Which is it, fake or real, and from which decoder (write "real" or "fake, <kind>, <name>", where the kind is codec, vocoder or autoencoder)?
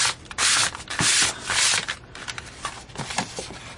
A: fake, vocoder, BigVGAN v2